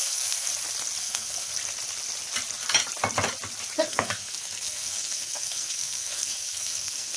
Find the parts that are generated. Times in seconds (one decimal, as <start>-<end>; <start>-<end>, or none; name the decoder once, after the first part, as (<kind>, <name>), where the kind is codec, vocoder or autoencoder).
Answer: 0.0-0.5 (codec, SNAC); 1.0-1.5; 3.9-7.2